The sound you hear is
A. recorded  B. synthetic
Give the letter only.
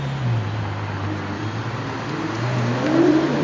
A